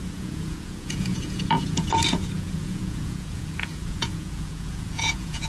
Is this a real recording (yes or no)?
no